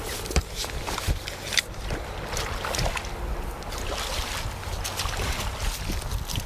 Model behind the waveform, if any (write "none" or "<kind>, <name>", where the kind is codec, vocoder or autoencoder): none